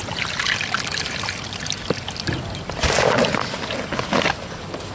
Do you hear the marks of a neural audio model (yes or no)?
no